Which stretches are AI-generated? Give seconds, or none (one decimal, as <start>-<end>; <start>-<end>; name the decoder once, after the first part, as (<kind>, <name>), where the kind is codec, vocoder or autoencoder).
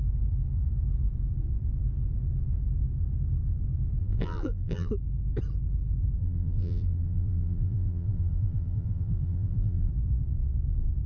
4.0-4.9 (vocoder, BigVGAN v2); 6.2-9.9